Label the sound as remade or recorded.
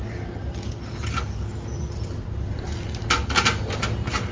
recorded